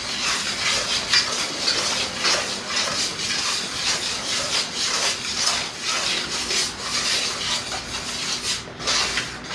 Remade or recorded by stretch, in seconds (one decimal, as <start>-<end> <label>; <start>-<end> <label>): 0.0-9.5 recorded

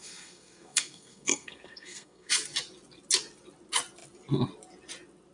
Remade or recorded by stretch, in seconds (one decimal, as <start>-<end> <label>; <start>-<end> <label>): 0.0-2.3 remade; 2.3-5.3 recorded

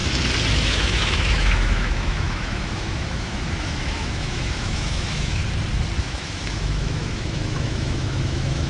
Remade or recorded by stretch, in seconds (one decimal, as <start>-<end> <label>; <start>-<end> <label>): 0.0-0.5 recorded; 0.5-5.4 remade; 5.4-6.0 recorded; 6.0-8.7 remade